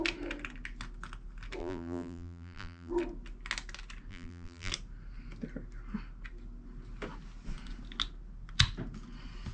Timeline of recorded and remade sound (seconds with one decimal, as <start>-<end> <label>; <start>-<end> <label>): 0.0-1.6 recorded; 1.6-2.9 remade; 2.9-4.1 recorded; 4.1-4.7 remade; 4.7-9.5 recorded